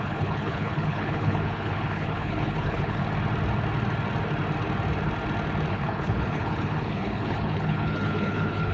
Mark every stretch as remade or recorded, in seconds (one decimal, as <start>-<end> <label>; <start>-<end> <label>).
0.0-3.0 remade; 3.0-5.7 recorded; 5.7-8.7 remade